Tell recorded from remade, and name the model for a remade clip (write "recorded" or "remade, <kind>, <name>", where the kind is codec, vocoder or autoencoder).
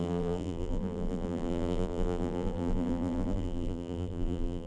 remade, vocoder, BigVGAN v2